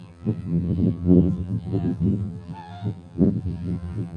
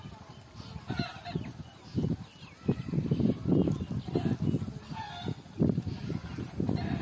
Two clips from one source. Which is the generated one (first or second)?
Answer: first